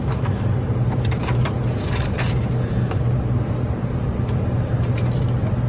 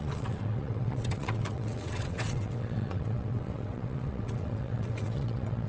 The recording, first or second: first